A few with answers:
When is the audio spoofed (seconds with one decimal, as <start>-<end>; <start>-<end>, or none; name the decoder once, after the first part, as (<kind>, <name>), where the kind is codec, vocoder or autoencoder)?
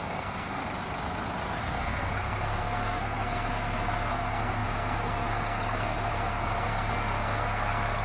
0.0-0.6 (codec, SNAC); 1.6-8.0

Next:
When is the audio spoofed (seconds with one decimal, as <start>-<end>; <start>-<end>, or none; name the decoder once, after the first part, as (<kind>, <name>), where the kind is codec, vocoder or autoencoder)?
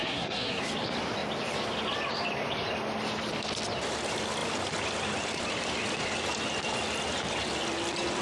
0.0-0.6 (codec, SNAC)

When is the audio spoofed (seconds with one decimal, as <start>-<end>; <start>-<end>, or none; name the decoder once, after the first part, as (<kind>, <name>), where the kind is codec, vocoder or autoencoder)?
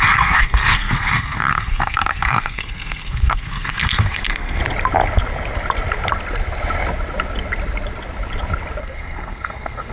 0.0-4.6 (codec, SNAC); 8.8-9.9